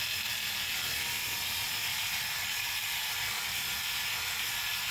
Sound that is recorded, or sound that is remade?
recorded